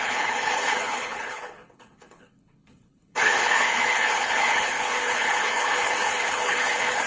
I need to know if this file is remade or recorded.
remade